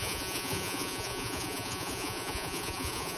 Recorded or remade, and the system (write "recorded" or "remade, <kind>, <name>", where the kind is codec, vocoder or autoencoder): remade, vocoder, Vocos